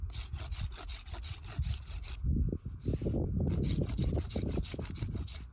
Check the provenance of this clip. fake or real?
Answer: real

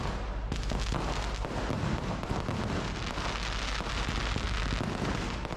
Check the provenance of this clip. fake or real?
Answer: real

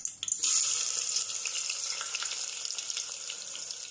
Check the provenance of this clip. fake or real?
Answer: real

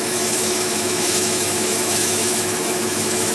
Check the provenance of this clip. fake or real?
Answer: fake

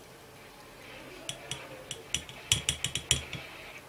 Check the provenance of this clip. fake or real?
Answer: real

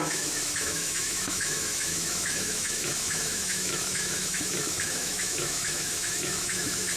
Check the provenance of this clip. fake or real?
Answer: fake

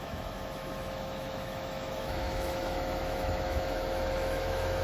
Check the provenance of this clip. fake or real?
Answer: fake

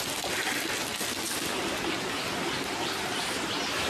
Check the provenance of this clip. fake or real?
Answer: real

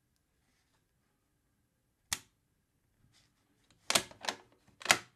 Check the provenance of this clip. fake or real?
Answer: real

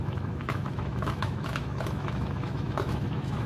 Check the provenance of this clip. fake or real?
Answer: fake